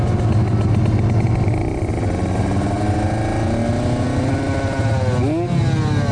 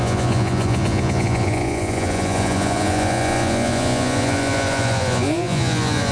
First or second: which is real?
first